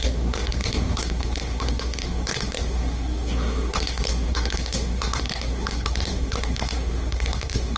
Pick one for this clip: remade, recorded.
remade